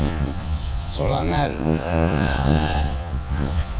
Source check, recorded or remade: remade